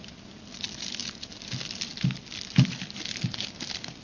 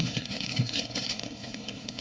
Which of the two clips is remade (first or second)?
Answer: second